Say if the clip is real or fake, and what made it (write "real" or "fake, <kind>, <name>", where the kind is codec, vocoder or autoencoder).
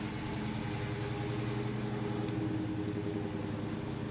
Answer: real